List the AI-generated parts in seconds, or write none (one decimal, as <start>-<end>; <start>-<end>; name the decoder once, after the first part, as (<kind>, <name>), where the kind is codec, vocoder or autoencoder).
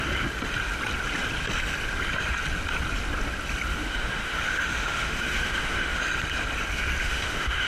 3.7-6.0 (autoencoder, DAC-VAE); 7.0-7.7